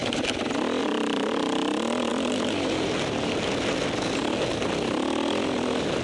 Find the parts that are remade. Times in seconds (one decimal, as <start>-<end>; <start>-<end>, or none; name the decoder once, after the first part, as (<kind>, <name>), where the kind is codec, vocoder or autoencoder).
none